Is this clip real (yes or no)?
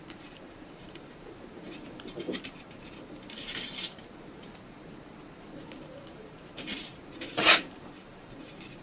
no